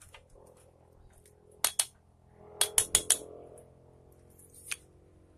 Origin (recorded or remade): recorded